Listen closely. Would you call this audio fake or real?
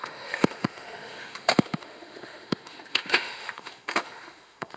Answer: fake